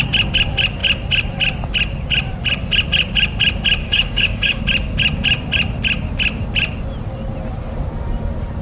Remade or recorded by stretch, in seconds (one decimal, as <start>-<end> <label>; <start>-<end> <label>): 0.0-3.8 recorded; 3.8-4.6 remade; 4.6-8.6 recorded